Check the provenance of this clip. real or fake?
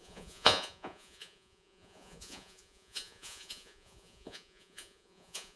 fake